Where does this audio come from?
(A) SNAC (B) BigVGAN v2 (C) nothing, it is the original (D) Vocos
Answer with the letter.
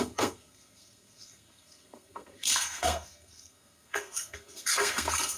A